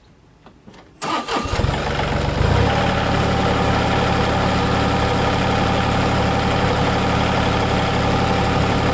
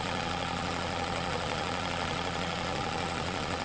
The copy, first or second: second